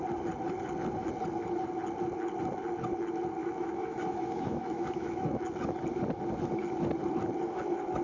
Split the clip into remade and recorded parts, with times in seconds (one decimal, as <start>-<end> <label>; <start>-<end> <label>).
0.0-3.4 recorded; 3.4-5.4 remade; 5.4-8.0 recorded